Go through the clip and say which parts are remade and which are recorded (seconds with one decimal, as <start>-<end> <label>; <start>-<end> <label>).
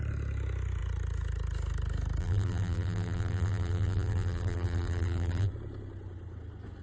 0.0-2.2 recorded; 2.2-5.5 remade; 5.5-6.8 recorded